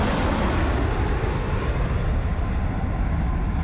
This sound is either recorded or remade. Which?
recorded